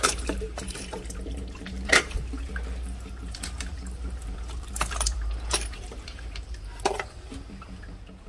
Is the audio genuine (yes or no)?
no